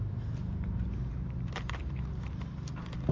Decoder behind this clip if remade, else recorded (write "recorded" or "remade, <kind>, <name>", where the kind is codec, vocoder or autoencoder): remade, vocoder, BigVGAN v2